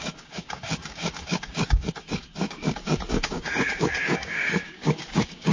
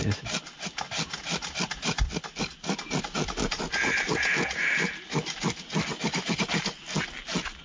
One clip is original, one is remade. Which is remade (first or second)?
first